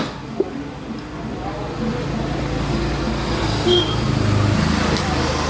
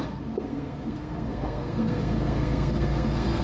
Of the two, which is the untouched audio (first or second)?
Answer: first